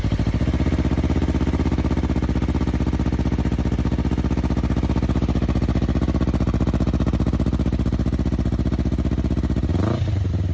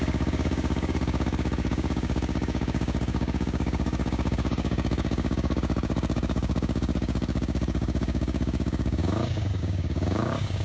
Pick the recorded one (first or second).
first